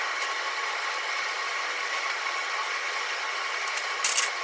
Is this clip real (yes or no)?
yes